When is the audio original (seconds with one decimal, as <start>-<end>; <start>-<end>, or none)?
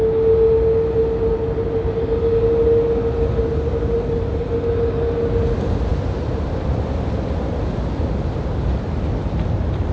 0.0-5.9; 6.9-9.9